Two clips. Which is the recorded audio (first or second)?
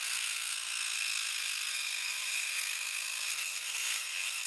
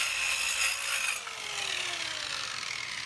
second